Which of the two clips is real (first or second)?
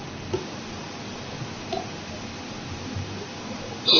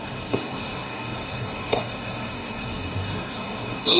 first